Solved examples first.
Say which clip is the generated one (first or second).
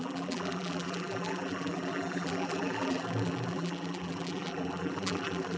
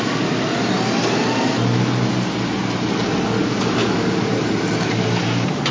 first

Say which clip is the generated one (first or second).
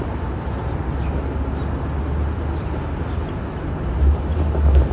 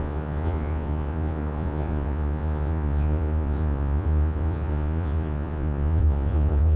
second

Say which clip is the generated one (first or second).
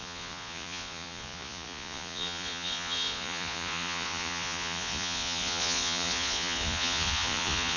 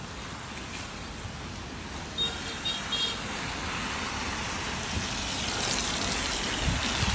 first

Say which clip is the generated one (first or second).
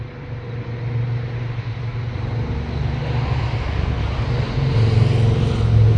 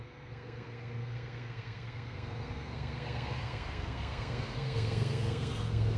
second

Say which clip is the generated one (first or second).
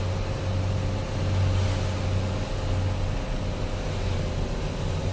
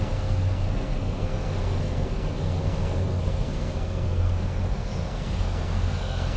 second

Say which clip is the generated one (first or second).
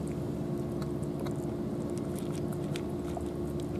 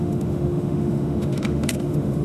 second